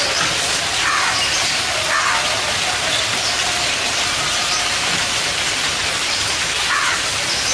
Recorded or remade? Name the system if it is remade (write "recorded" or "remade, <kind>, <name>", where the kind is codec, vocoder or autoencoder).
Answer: recorded